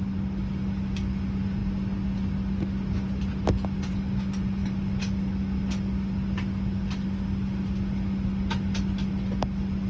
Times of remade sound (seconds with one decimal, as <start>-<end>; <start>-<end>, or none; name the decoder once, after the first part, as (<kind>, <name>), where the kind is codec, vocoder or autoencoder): none